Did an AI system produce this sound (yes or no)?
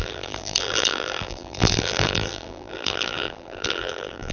yes